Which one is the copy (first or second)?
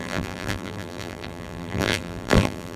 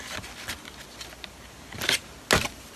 first